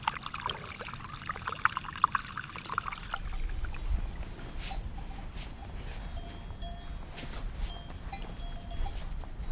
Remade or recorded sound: recorded